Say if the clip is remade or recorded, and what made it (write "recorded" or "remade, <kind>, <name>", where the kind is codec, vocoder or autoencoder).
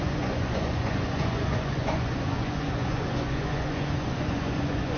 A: remade, vocoder, Vocos